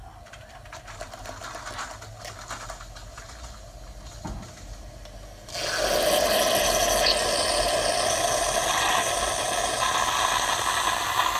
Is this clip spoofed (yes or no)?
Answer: no